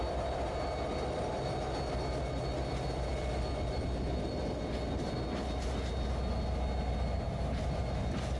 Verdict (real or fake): real